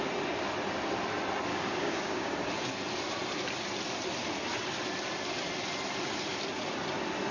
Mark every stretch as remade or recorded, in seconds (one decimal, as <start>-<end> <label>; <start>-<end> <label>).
0.0-1.5 recorded; 1.5-2.3 remade; 2.3-7.3 recorded